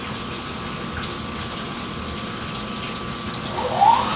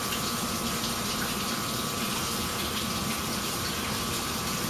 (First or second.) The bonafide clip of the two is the first